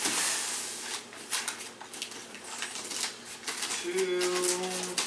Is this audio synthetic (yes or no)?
no